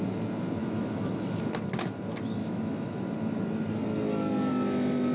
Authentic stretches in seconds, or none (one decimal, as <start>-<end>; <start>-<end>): 0.0-0.6; 1.4-2.4; 3.0-5.1